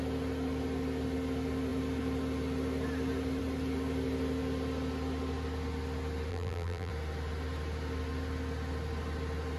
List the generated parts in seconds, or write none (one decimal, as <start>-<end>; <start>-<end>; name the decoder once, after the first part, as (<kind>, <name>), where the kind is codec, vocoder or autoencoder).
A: 6.3-6.9 (vocoder, BigVGAN v2)